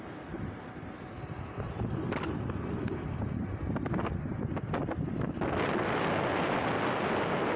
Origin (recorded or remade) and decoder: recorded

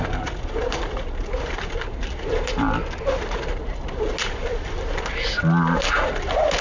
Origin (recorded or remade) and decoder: recorded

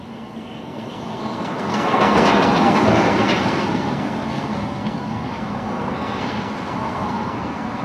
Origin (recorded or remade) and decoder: remade, codec, SNAC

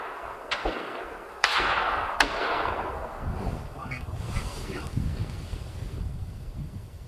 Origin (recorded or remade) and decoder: remade, codec, SNAC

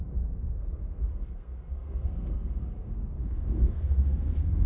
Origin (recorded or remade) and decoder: remade, codec, SNAC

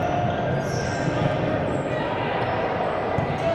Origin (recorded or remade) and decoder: recorded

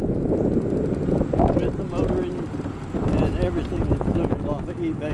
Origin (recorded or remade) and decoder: recorded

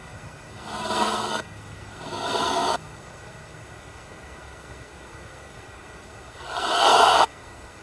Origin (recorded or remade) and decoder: remade, codec, SNAC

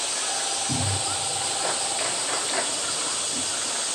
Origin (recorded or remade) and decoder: recorded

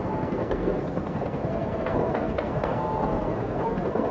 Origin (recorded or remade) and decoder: remade, codec, SNAC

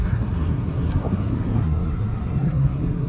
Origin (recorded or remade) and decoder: remade, codec, SNAC